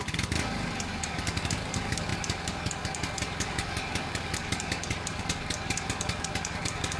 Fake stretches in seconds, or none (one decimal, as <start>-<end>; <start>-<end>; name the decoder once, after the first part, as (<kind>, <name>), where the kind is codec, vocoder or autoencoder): 0.0-7.0 (codec, DAC)